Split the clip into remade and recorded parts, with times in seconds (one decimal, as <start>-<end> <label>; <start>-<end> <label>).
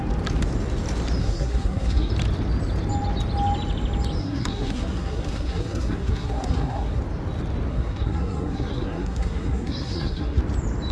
0.0-1.2 recorded; 1.2-2.1 remade; 2.1-4.2 recorded; 4.2-7.0 remade; 7.0-7.7 recorded; 7.7-10.4 remade; 10.4-10.9 recorded